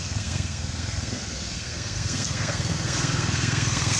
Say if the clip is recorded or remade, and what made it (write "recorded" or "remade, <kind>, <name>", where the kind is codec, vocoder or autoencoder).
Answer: remade, codec, SNAC